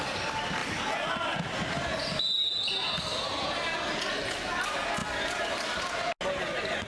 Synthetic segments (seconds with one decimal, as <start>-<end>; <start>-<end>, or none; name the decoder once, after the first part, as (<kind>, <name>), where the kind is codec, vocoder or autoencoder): none

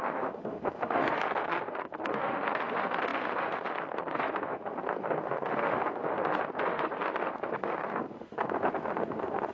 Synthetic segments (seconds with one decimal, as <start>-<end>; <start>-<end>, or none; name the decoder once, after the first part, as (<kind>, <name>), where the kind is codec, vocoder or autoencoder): 0.0-9.5 (autoencoder, DAC-VAE)

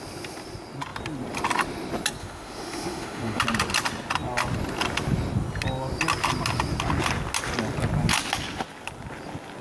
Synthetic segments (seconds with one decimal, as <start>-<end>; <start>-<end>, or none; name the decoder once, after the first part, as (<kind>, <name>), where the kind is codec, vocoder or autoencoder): 2.2-3.4 (autoencoder, DAC-VAE)